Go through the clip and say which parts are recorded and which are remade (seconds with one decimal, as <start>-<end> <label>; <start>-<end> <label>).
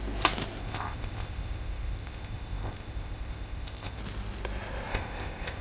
0.0-0.6 recorded; 0.6-4.0 remade; 4.0-4.9 recorded; 4.9-5.6 remade